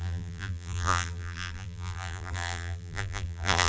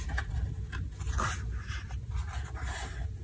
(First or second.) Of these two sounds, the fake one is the first